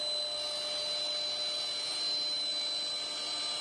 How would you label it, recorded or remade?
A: recorded